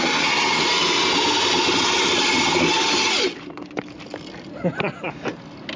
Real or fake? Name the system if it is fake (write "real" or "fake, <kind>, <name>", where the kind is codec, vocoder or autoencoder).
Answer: real